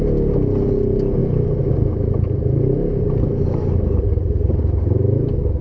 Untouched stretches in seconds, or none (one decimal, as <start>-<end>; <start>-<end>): 0.0-1.2; 4.6-5.6